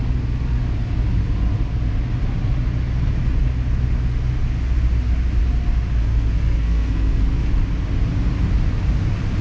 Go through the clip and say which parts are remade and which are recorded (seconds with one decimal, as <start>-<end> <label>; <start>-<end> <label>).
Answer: 0.0-6.1 recorded; 6.1-7.5 remade; 7.5-9.4 recorded